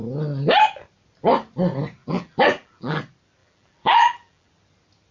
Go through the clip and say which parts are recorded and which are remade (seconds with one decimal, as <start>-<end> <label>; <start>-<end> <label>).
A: 0.0-2.0 recorded; 2.0-3.0 remade; 3.0-3.4 recorded; 3.4-4.5 remade; 4.5-5.1 recorded